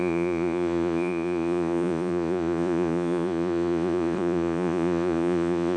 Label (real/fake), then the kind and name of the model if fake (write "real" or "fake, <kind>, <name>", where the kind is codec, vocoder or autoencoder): fake, vocoder, Vocos